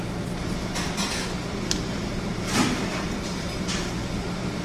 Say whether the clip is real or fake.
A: real